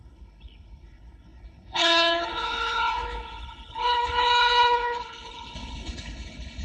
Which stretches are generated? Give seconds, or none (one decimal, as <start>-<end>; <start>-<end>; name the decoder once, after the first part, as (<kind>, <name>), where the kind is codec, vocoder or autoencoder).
0.0-6.6 (codec, HILCodec)